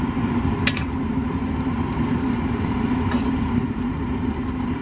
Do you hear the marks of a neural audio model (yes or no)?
yes